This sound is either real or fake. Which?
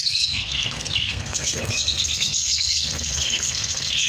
fake